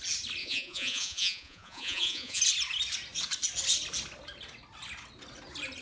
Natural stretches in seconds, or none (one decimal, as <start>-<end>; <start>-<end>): 0.0-0.4; 2.4-5.8